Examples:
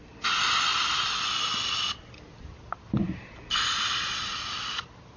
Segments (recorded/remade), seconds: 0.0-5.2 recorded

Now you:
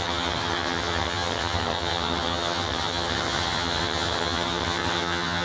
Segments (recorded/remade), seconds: 0.0-5.4 remade

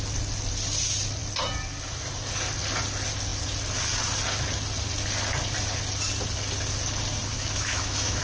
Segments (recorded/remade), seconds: 0.0-7.3 recorded; 7.3-8.2 remade

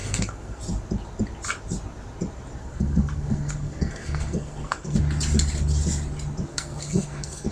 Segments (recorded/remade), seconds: 0.0-0.6 remade; 0.6-2.6 recorded; 2.6-5.0 remade; 5.0-6.5 recorded; 6.5-7.5 remade

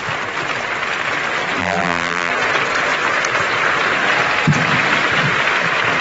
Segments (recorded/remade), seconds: 0.0-1.6 recorded; 1.6-2.3 remade; 2.3-6.0 recorded

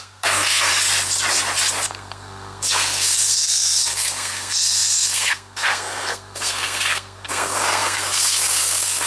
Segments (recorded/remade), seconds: 0.0-0.7 remade; 0.7-1.9 recorded; 1.9-9.1 remade

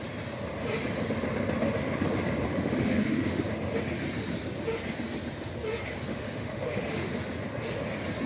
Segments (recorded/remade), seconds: 0.0-2.5 recorded; 2.5-3.4 remade; 3.4-6.1 recorded; 6.1-7.1 remade; 7.1-8.3 recorded

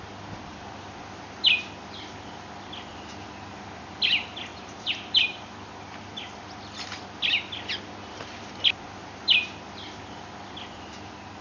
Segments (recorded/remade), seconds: 0.0-4.5 recorded; 4.5-5.4 remade; 5.4-11.4 recorded